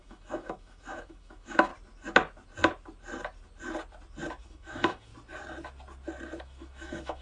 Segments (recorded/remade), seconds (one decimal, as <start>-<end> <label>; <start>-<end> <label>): 0.0-1.7 remade; 1.7-4.4 recorded; 4.4-5.1 remade; 5.1-6.4 recorded; 6.4-7.2 remade